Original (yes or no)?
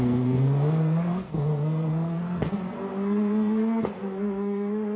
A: no